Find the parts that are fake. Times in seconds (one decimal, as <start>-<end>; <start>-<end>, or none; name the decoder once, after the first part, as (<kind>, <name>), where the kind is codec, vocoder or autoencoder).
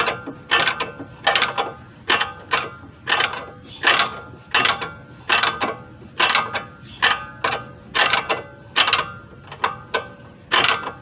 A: none